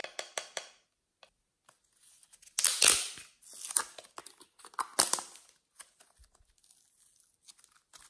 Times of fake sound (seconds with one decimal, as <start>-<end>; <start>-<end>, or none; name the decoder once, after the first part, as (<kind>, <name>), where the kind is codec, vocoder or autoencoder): none